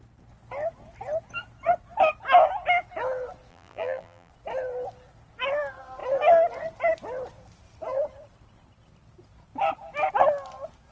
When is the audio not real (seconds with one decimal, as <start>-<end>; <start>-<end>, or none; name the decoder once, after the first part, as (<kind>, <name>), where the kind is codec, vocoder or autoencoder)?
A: 3.5-4.3 (vocoder, BigVGAN v2)